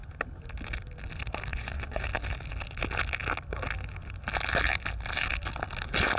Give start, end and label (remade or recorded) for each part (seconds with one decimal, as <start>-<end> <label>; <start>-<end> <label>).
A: 0.0-1.5 recorded; 1.5-2.0 remade; 2.0-6.2 recorded